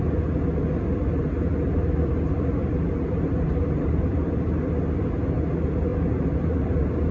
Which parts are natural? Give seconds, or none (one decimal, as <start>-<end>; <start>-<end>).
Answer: 0.0-2.6; 4.7-5.9